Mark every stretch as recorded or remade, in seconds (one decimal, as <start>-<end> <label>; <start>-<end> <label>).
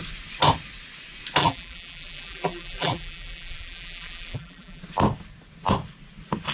0.0-1.4 recorded; 1.4-4.8 remade; 4.8-6.5 recorded